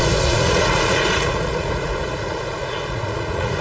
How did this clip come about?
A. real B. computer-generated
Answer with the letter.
B